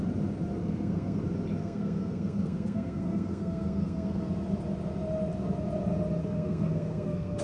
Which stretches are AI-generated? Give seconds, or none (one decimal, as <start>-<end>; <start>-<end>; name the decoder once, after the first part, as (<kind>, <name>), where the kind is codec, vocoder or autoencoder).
0.6-1.2 (codec, SNAC); 1.6-4.2; 6.2-7.4